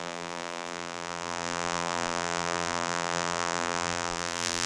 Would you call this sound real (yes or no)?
no